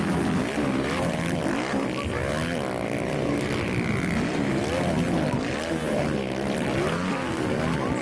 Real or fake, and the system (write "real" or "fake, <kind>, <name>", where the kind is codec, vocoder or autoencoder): real